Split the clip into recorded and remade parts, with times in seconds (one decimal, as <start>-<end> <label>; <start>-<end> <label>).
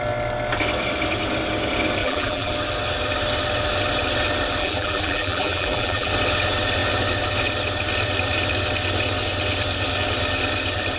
0.0-2.0 recorded; 2.0-2.5 remade; 2.5-4.6 recorded; 4.6-6.1 remade; 6.1-11.0 recorded